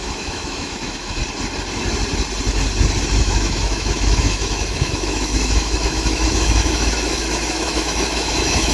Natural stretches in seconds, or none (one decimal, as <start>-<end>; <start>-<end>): 1.2-3.2